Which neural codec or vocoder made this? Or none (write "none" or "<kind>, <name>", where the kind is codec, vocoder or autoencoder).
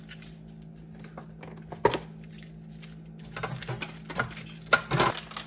none